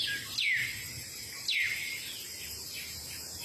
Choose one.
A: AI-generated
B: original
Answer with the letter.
B